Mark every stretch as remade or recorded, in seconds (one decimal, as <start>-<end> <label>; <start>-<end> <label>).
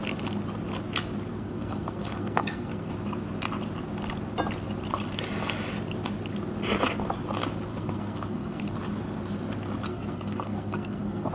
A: 0.0-1.3 recorded; 1.3-2.9 remade; 2.9-7.7 recorded; 7.7-8.8 remade; 8.8-9.9 recorded; 9.9-11.3 remade